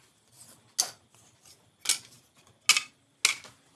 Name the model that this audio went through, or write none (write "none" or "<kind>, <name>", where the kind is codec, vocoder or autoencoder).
none